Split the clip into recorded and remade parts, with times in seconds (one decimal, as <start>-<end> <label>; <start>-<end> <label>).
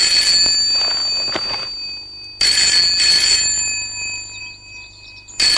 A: 0.0-5.6 recorded